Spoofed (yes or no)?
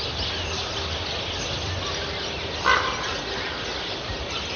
no